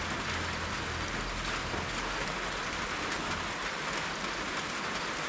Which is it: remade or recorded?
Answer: recorded